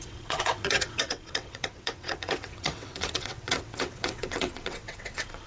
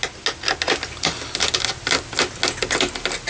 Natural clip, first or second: second